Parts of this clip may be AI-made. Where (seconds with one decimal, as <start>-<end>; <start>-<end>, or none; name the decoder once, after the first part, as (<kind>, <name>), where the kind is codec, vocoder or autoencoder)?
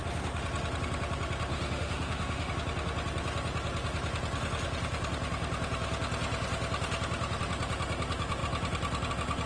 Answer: 1.5-2.5 (autoencoder, DAC-VAE)